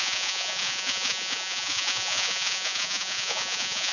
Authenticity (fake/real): fake